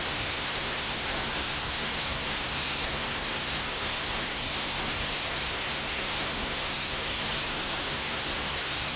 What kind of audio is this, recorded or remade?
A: remade